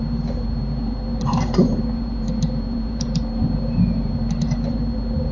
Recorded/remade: remade